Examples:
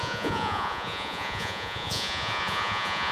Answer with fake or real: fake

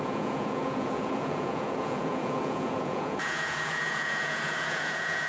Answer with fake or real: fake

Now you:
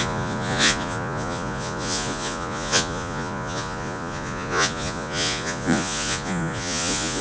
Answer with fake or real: fake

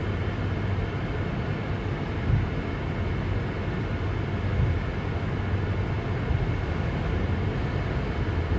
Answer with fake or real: real